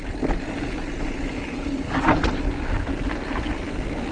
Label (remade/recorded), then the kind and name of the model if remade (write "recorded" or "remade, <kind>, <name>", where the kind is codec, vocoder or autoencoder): remade, vocoder, BigVGAN v2